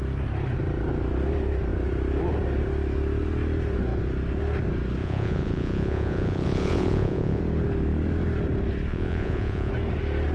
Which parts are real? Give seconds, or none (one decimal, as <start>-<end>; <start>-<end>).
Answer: 0.0-5.0; 7.4-8.9; 9.7-10.3